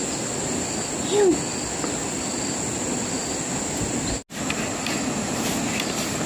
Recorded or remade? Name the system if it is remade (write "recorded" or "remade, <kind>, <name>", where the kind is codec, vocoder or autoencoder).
recorded